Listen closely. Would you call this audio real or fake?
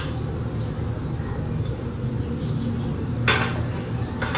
real